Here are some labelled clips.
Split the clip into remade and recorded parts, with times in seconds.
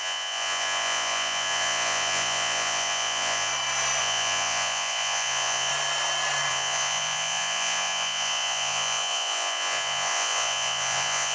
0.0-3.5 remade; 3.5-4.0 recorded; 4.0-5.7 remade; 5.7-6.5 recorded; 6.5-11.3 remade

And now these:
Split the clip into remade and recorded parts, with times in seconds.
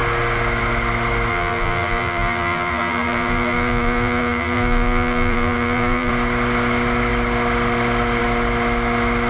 0.0-1.3 recorded; 1.3-6.1 remade; 6.1-9.3 recorded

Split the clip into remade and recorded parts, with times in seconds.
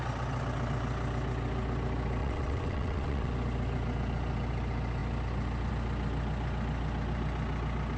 0.0-2.2 recorded; 2.2-3.3 remade; 3.3-8.0 recorded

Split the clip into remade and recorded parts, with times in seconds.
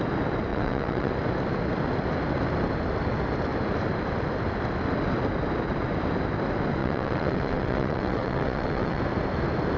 0.0-0.5 recorded; 0.5-1.1 remade; 1.1-6.8 recorded; 6.8-9.0 remade; 9.0-9.8 recorded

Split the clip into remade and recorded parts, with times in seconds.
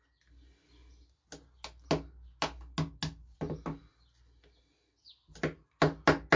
0.0-6.4 recorded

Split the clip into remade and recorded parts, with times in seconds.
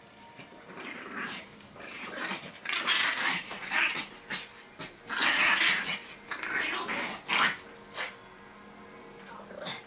0.0-4.0 remade; 4.0-9.0 recorded; 9.0-9.9 remade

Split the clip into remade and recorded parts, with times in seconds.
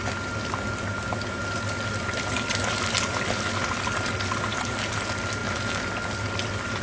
0.0-6.8 recorded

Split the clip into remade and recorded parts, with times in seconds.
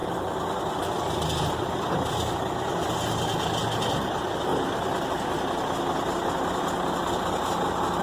0.0-8.0 recorded